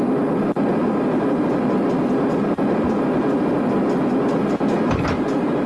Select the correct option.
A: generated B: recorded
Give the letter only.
B